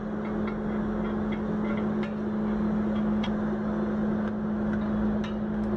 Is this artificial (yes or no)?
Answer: no